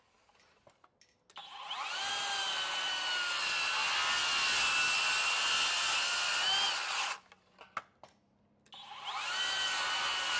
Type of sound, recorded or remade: recorded